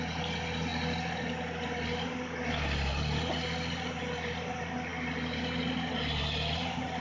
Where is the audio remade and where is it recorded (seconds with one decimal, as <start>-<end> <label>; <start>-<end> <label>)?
0.0-7.0 recorded

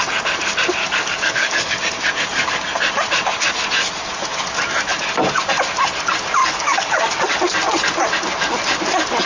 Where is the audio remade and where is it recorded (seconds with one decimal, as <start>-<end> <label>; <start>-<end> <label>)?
0.0-0.8 recorded; 0.8-1.7 remade; 1.7-6.4 recorded; 6.4-7.4 remade; 7.4-9.3 recorded

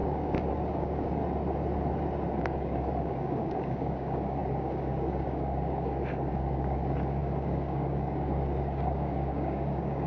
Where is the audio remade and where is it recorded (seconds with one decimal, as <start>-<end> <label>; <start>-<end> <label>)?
0.0-1.2 remade; 1.2-2.4 recorded; 2.4-10.1 remade

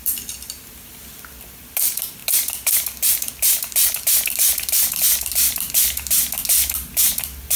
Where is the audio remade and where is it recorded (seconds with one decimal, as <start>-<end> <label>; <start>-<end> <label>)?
0.0-7.6 recorded